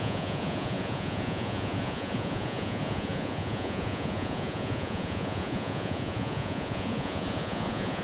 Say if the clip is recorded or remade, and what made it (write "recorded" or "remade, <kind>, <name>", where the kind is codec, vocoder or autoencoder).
remade, vocoder, Vocos